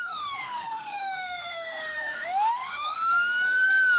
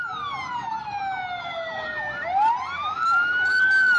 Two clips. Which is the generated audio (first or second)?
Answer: first